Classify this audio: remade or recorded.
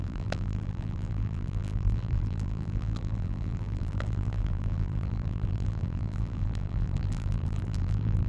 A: remade